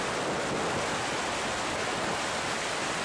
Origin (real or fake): real